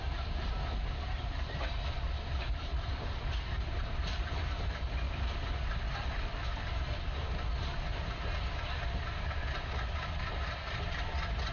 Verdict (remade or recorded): recorded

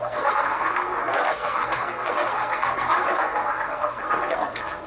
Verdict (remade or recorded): remade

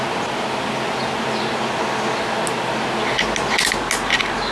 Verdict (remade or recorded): recorded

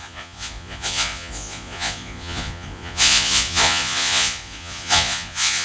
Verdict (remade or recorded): remade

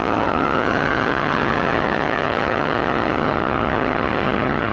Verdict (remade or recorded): remade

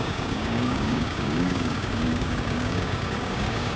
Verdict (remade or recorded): remade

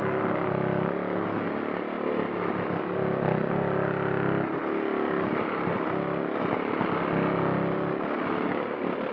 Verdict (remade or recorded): recorded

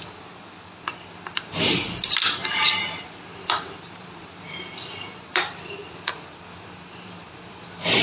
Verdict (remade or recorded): remade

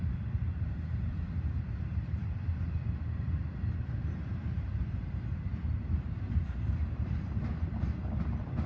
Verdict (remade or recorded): remade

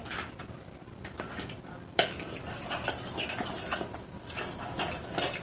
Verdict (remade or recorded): recorded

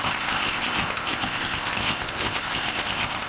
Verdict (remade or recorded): remade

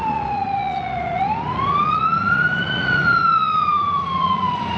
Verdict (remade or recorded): remade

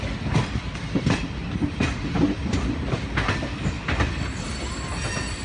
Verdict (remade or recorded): recorded